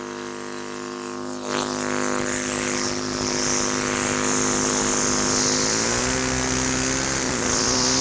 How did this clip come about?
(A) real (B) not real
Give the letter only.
A